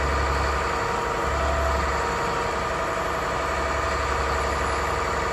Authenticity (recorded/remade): recorded